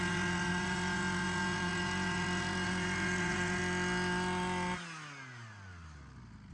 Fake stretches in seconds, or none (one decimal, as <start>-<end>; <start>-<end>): 0.0-3.6